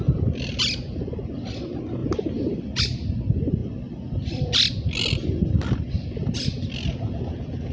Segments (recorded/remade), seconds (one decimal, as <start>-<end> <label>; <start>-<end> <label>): 0.0-7.7 recorded